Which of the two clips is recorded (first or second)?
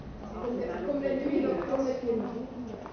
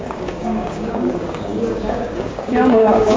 first